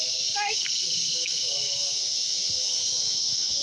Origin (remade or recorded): remade